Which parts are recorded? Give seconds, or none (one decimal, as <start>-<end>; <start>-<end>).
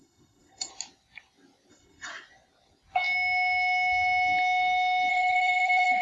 0.7-1.7; 2.1-5.1